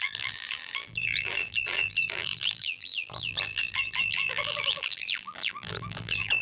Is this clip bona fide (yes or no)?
no